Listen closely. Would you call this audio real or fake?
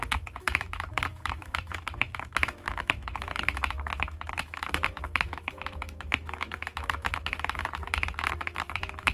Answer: fake